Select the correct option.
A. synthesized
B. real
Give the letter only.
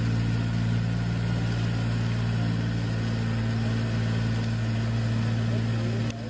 B